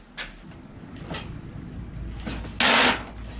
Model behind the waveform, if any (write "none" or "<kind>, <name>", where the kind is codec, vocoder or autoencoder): none